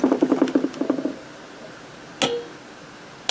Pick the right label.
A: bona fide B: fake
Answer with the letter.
A